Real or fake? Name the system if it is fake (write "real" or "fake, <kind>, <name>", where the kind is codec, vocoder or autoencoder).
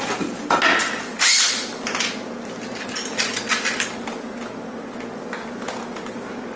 real